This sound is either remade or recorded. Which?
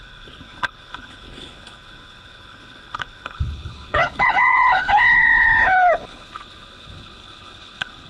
remade